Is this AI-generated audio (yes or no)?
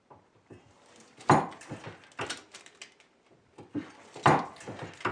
no